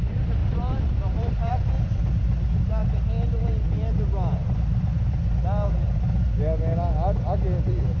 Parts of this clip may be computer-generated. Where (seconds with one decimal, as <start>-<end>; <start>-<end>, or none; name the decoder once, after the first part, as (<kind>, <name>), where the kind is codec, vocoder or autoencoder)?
0.4-1.5 (vocoder, BigVGAN v2)

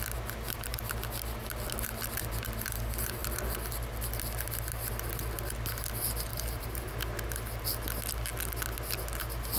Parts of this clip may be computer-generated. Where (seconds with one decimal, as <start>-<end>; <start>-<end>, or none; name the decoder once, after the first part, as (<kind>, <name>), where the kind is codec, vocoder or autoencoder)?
6.3-6.9 (vocoder, BigVGAN v2)

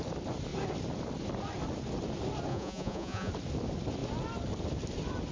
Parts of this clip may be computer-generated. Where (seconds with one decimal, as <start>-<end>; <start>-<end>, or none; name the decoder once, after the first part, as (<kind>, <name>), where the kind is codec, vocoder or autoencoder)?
2.5-3.3 (vocoder, Vocos)

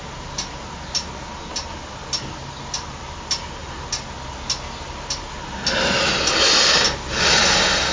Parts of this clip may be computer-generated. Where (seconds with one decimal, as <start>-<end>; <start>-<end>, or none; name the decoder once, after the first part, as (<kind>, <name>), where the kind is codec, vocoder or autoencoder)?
none